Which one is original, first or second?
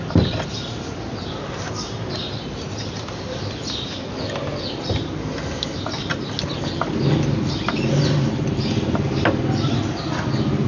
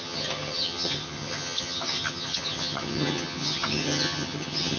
first